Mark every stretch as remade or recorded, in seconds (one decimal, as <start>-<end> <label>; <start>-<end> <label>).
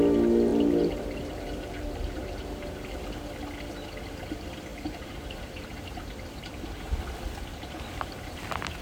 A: 0.0-0.5 recorded; 0.5-2.9 remade; 2.9-4.7 recorded; 4.7-7.0 remade; 7.0-7.5 recorded; 7.5-8.4 remade; 8.4-8.8 recorded